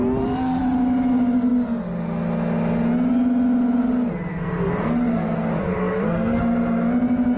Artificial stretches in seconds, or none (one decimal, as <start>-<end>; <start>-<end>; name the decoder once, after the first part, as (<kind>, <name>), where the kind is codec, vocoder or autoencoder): 4.3-6.4 (codec, SNAC)